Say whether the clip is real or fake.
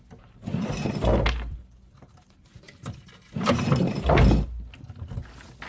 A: real